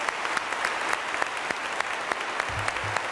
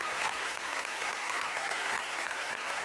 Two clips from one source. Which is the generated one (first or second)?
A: second